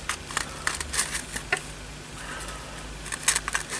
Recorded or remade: recorded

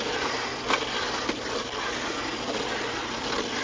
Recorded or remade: recorded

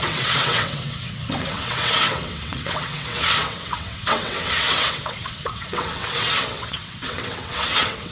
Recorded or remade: remade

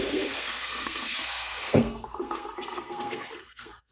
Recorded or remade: remade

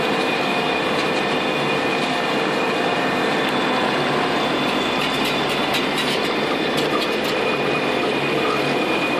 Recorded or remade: recorded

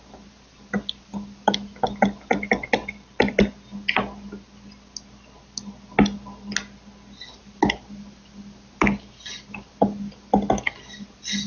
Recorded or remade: recorded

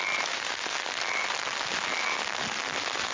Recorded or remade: recorded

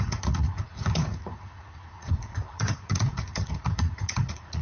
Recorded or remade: remade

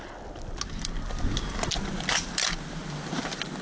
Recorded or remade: recorded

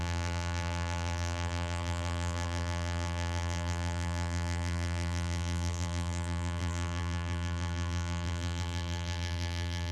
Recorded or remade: remade